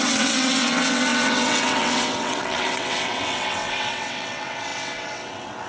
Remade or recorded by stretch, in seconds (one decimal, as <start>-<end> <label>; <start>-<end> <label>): 0.0-5.7 remade